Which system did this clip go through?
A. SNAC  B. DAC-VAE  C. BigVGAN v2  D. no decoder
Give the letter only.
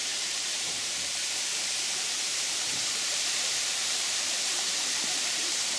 C